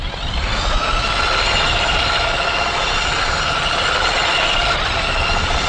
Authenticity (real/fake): real